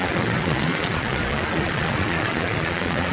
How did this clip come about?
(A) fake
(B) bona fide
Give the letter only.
A